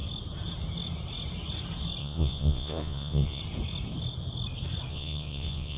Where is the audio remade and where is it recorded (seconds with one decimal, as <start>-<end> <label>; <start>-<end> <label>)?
0.0-2.0 recorded; 2.0-3.4 remade; 3.4-4.9 recorded; 4.9-5.8 remade